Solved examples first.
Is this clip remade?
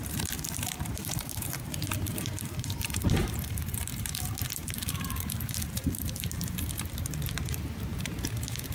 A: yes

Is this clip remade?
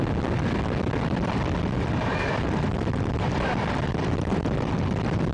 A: no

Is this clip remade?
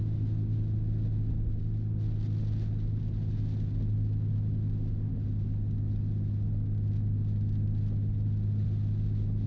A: no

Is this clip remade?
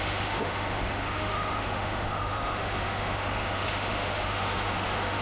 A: yes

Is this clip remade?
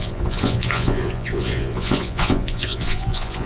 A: yes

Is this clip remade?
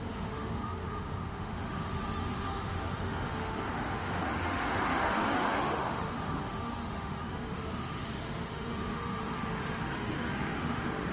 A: yes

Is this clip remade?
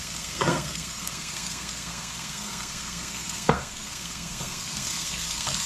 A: yes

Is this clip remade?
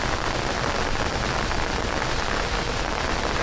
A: no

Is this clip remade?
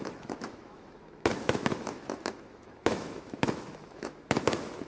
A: yes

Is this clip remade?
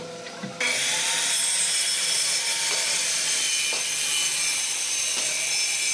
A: no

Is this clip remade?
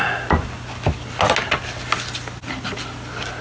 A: no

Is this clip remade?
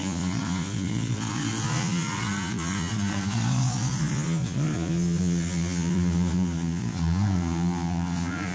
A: yes